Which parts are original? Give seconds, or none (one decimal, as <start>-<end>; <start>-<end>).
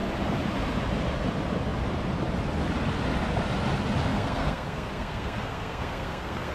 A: 0.0-4.1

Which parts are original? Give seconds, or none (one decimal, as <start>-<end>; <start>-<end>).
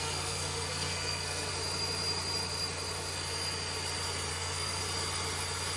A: 1.5-4.3; 4.8-5.8